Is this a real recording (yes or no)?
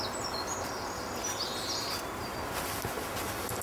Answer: yes